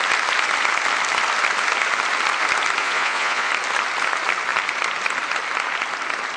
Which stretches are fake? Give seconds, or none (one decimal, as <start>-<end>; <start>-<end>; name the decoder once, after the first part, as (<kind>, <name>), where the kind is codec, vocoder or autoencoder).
2.8-3.5 (vocoder, Vocos)